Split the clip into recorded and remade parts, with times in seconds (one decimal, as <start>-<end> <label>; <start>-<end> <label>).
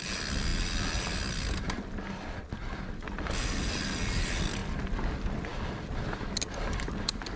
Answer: 0.0-7.4 recorded